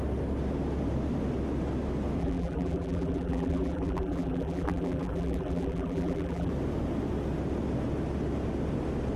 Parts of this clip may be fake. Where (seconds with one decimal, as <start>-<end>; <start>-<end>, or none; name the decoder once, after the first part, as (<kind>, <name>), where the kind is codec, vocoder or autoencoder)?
2.2-6.5 (vocoder, BigVGAN v2)